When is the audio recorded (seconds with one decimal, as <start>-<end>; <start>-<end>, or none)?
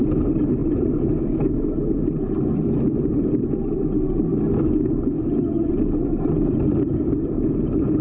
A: 4.3-5.7